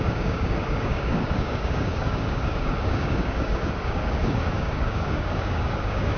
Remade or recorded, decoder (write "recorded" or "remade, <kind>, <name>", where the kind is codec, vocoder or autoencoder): remade, codec, DAC